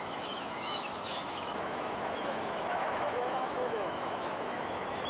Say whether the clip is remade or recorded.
remade